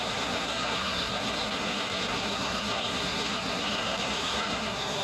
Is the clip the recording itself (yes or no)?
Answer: no